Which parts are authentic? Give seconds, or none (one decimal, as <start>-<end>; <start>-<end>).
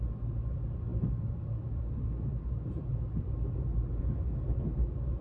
none